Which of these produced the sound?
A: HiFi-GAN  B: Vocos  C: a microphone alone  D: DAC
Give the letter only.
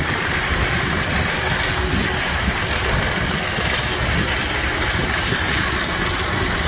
C